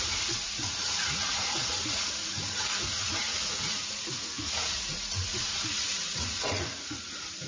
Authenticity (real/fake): fake